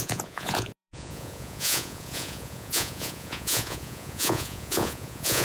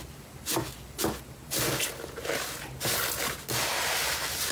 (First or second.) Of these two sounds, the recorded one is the second